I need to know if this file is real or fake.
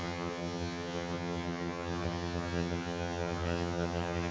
fake